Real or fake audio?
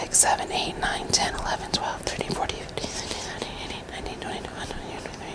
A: real